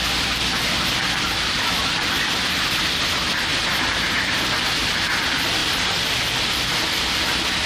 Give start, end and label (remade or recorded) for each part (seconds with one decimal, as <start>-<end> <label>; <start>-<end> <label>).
0.0-3.5 recorded; 3.5-4.5 remade; 4.5-5.6 recorded; 5.6-6.1 remade; 6.1-7.7 recorded